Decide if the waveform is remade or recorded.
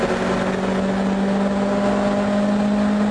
recorded